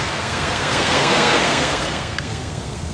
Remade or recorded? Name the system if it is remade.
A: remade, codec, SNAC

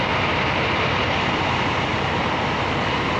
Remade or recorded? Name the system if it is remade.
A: remade, vocoder, BigVGAN v2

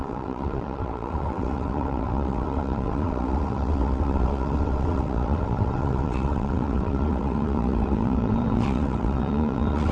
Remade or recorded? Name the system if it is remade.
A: remade, vocoder, WaveNeXt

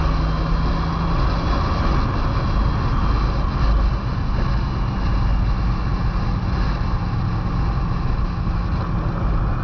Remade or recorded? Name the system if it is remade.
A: recorded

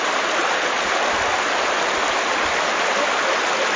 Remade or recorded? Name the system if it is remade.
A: recorded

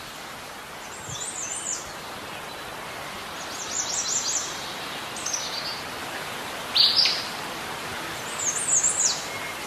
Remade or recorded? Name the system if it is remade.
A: recorded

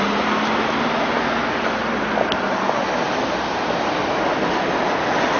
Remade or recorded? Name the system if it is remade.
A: recorded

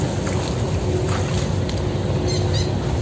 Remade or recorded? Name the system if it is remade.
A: recorded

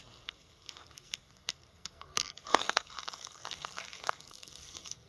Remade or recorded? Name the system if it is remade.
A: remade, codec, SNAC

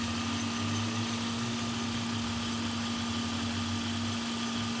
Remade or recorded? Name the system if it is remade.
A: recorded